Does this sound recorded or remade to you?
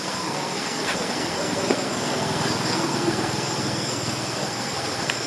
remade